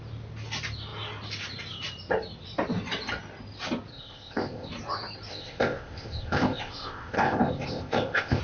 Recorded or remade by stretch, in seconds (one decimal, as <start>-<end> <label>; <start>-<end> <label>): 0.0-3.9 recorded; 3.9-4.7 remade; 4.7-5.3 recorded; 5.3-8.4 remade